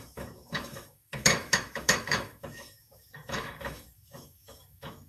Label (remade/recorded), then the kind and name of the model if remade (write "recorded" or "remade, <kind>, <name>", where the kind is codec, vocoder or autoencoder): remade, autoencoder, DAC-VAE